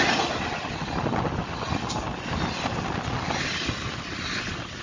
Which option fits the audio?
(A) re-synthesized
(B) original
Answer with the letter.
B